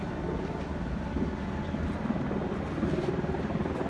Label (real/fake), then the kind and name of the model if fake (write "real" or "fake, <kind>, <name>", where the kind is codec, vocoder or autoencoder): real